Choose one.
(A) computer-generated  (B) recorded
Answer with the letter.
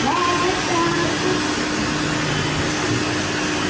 B